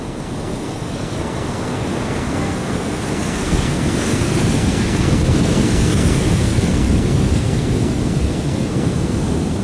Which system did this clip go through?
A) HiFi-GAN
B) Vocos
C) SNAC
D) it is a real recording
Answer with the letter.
C